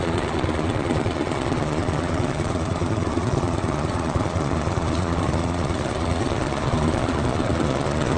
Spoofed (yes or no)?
yes